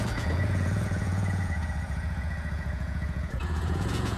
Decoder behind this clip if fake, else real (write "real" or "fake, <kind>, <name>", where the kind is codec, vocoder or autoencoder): fake, vocoder, Vocos